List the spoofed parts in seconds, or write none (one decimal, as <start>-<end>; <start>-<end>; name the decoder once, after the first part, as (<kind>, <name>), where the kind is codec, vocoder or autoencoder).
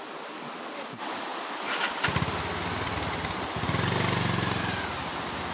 none